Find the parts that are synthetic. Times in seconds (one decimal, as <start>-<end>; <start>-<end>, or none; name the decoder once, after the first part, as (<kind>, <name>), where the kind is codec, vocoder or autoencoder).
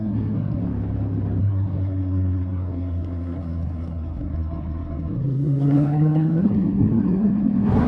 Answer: 0.0-0.6 (codec, SNAC); 1.4-7.9